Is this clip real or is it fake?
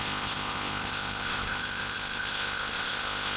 fake